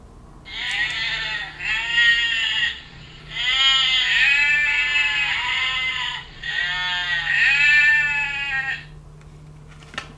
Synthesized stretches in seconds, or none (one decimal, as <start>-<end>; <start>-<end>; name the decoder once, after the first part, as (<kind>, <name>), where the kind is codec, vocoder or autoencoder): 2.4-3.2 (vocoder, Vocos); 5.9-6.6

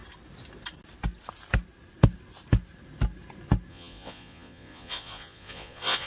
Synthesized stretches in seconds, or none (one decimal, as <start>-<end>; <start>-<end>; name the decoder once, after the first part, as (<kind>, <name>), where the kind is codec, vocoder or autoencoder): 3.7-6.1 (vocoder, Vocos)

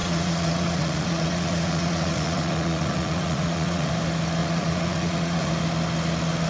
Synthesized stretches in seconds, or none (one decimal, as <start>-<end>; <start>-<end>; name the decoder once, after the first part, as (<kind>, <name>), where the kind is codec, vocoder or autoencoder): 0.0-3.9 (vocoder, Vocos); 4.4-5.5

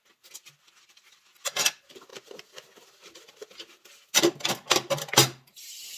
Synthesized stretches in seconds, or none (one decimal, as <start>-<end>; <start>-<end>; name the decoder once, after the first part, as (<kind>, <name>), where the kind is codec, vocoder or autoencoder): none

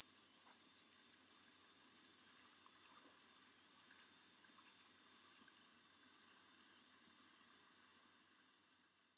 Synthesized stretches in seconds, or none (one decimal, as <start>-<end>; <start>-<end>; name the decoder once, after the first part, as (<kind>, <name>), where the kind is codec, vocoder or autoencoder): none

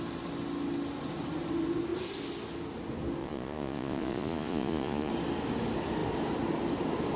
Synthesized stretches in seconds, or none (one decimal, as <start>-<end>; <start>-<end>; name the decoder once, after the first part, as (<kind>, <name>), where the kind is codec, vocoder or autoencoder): 3.2-5.1 (vocoder, Vocos)

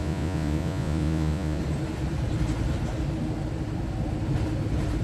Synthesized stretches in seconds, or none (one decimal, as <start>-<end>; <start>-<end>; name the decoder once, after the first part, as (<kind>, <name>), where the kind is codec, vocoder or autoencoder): 0.0-1.6 (vocoder, Vocos)